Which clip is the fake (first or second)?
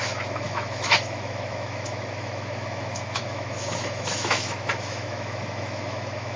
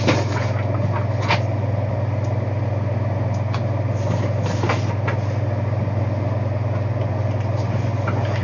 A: first